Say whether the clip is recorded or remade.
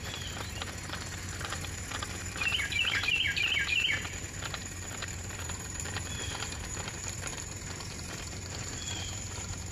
remade